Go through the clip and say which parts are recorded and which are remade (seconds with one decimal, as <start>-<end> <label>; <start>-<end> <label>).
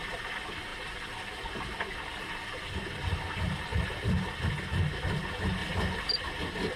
0.0-0.7 recorded; 0.7-2.6 remade; 2.6-6.8 recorded